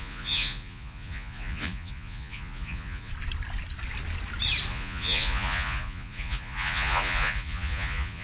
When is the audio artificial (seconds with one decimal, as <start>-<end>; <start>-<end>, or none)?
0.0-3.1; 4.7-8.2